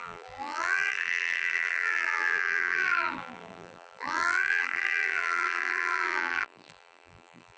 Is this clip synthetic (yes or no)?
yes